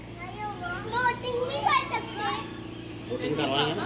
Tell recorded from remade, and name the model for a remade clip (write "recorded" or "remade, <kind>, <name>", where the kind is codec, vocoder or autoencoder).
recorded